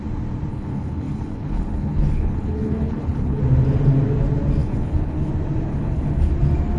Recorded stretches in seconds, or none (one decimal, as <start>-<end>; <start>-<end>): 0.0-0.5; 3.4-4.6; 5.3-5.7; 6.3-6.8

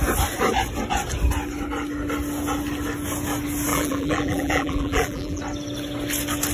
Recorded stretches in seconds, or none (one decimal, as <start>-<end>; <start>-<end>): 0.0-3.7; 5.4-6.5

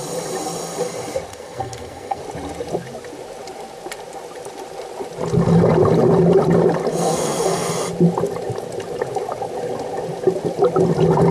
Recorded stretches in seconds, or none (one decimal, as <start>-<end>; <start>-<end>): 0.0-1.3; 2.2-7.0; 7.7-11.3

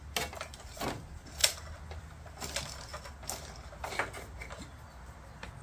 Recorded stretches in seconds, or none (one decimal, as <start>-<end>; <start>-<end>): 0.0-5.6